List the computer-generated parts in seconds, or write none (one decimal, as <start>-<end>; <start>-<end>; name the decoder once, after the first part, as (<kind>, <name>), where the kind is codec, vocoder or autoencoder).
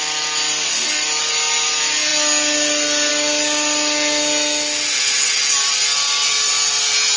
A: none